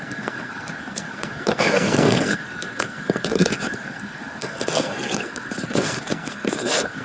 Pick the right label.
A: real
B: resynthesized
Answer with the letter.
B